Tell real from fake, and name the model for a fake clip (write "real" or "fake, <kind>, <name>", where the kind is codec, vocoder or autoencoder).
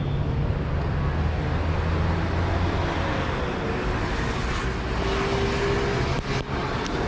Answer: real